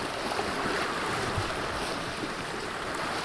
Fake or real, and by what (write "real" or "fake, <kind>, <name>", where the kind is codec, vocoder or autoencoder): fake, vocoder, BigVGAN v2